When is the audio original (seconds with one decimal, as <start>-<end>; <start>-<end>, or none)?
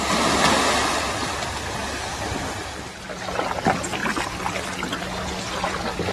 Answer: 0.0-6.1